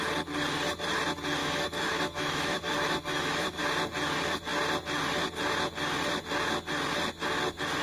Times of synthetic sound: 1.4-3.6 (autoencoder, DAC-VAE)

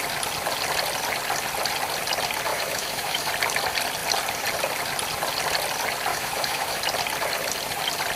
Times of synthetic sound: 2.5-3.3 (autoencoder, DAC-VAE); 6.1-6.8